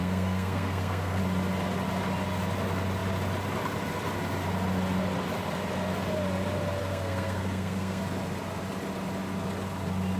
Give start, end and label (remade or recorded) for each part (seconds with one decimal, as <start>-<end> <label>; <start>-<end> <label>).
0.0-1.2 remade; 1.2-6.8 recorded; 6.8-8.0 remade; 8.0-10.2 recorded